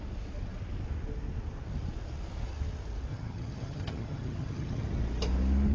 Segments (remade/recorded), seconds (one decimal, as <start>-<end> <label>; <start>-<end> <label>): 0.0-3.1 recorded; 3.1-4.9 remade; 4.9-5.7 recorded